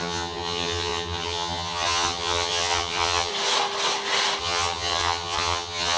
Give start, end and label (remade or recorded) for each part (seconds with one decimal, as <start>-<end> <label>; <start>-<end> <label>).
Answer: 0.0-3.3 remade; 3.3-4.4 recorded; 4.4-6.0 remade